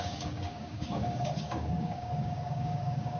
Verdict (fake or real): fake